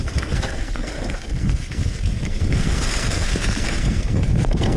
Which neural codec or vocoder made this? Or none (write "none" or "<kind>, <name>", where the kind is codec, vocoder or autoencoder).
codec, SNAC